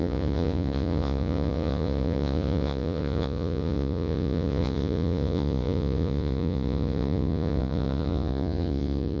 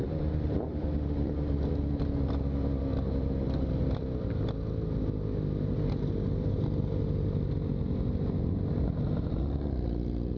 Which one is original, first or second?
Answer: second